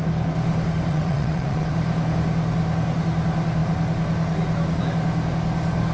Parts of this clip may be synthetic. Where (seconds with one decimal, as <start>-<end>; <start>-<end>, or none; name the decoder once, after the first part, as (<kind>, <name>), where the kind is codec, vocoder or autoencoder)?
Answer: 0.9-1.7 (vocoder, WaveNeXt)